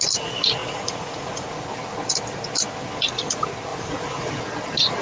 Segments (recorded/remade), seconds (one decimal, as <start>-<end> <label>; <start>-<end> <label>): 0.0-0.6 recorded; 0.6-1.5 remade; 1.5-3.7 recorded; 3.7-4.3 remade; 4.3-5.0 recorded